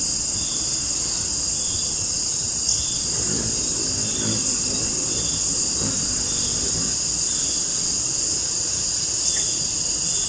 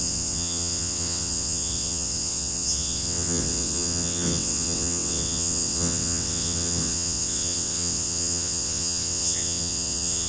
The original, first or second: first